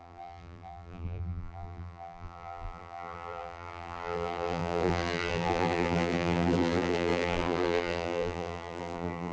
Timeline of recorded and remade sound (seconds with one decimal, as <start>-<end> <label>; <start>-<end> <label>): 0.0-9.3 remade